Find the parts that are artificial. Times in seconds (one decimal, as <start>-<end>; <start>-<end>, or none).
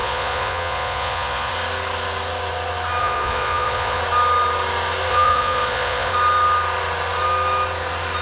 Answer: 0.0-1.5; 3.0-4.0; 5.1-6.1